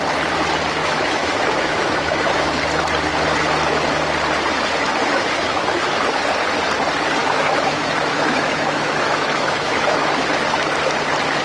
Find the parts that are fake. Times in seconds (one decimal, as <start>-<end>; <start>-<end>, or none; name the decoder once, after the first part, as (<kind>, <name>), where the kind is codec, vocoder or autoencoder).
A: 0.8-2.5 (autoencoder, DAC-VAE); 5.0-6.0; 7.2-10.2